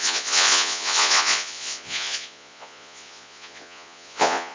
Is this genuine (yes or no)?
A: no